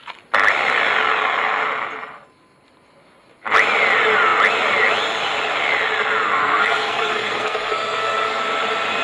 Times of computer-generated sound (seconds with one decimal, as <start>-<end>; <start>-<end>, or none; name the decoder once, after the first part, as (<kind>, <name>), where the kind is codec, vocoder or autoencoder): 6.4-8.4 (codec, SNAC)